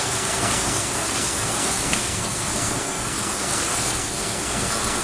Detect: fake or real fake